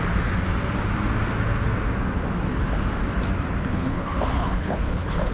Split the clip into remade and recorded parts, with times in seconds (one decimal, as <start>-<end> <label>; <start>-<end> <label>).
0.0-3.6 recorded; 3.6-5.3 remade